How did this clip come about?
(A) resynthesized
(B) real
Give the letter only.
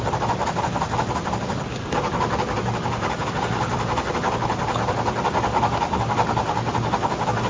B